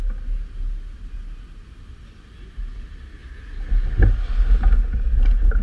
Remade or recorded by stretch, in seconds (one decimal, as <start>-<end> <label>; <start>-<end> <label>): 0.0-5.6 recorded